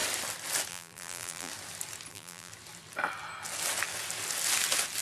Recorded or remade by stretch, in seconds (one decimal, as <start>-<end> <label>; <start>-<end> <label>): 0.0-0.7 recorded; 0.7-1.5 remade; 1.5-2.1 recorded; 2.1-2.5 remade; 2.5-5.0 recorded